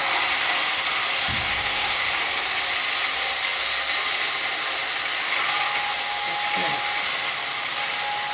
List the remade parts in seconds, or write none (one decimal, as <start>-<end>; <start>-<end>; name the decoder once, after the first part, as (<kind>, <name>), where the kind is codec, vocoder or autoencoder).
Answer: 1.5-2.1 (codec, SNAC)